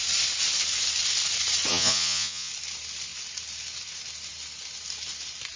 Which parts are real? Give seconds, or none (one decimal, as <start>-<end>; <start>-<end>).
0.0-1.7; 2.5-5.6